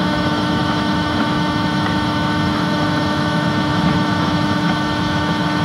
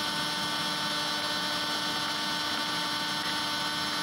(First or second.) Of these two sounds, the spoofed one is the first